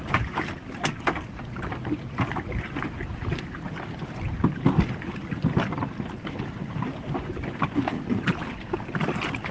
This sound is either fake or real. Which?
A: real